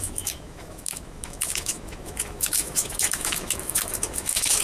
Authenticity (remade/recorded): remade